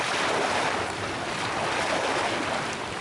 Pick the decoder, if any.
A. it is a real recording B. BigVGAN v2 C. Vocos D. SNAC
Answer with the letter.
A